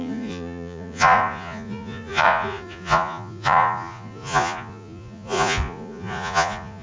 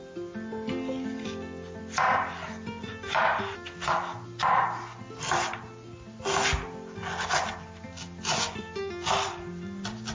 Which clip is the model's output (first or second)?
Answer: first